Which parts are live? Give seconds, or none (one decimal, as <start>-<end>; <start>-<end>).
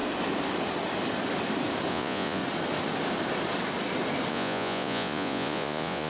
0.0-1.9; 2.4-4.3